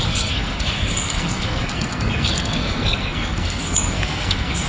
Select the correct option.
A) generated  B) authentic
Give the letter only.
A